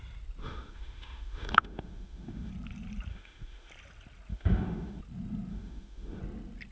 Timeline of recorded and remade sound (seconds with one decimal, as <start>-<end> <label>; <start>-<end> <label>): 0.0-0.4 recorded; 0.4-2.5 remade; 2.5-3.1 recorded; 3.1-3.7 remade; 3.7-4.3 recorded; 4.3-5.0 remade; 5.0-5.5 recorded; 5.5-6.2 remade; 6.2-6.7 recorded